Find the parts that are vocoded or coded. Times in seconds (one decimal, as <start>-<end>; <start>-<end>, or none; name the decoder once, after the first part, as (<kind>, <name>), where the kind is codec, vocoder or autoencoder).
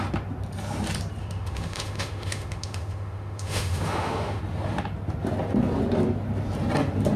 1.2-4.4 (autoencoder, DAC-VAE)